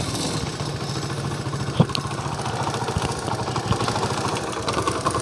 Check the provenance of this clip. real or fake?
real